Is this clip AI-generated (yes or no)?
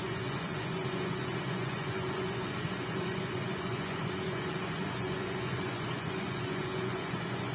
yes